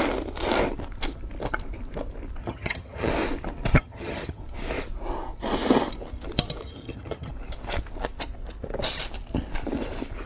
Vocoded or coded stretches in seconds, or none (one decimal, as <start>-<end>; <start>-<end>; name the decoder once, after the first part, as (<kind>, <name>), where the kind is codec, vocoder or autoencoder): 2.4-3.1 (vocoder, HiFi-GAN); 3.7-4.4; 6.6-7.3